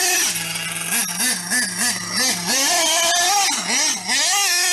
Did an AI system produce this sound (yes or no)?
no